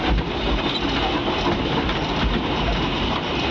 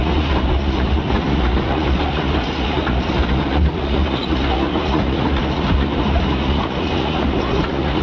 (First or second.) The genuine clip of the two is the first